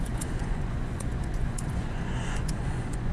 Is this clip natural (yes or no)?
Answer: no